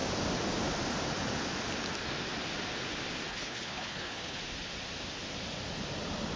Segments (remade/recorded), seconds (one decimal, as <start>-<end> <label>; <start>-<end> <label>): 0.0-3.3 recorded; 3.3-4.4 remade; 4.4-6.4 recorded